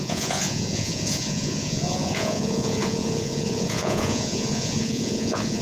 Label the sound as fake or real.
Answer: fake